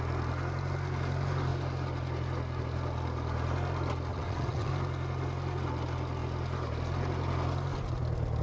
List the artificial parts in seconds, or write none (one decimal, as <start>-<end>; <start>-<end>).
4.1-4.7